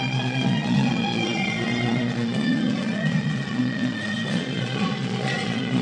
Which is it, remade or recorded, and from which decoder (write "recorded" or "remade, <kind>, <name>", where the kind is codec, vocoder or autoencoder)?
remade, vocoder, Vocos